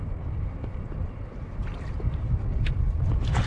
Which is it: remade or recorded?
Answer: recorded